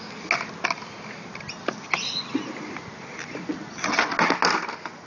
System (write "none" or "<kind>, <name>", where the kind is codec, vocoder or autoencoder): none